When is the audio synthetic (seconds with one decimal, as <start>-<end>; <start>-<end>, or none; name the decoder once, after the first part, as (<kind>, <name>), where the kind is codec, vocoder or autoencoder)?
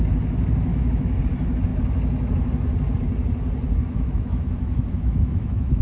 0.7-1.2 (autoencoder, DAC-VAE); 3.8-5.8